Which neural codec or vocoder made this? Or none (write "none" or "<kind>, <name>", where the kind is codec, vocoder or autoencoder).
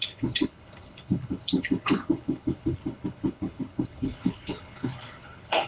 codec, HILCodec